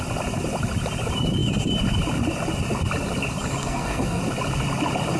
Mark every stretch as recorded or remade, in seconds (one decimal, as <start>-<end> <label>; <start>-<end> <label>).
0.0-3.6 recorded; 3.6-4.2 remade; 4.2-5.2 recorded